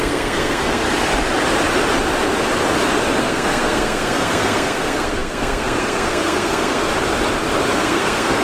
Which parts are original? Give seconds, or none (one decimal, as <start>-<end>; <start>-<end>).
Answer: 0.8-3.2; 6.9-7.8